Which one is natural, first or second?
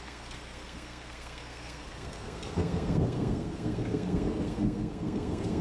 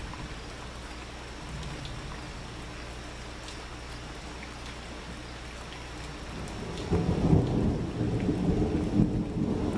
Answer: second